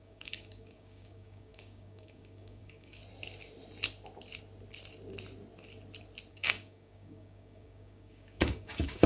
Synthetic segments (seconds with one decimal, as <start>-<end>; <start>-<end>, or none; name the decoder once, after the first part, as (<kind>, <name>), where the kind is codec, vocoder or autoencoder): 0.0-3.0 (codec, DAC); 6.3-9.1